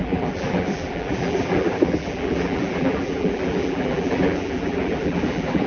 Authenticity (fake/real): fake